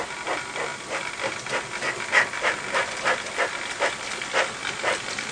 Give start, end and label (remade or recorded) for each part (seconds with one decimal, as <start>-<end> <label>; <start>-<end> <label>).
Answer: 0.0-5.3 recorded